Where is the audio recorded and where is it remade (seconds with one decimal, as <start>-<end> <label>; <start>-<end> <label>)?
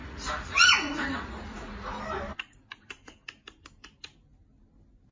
0.0-2.0 remade; 2.0-5.1 recorded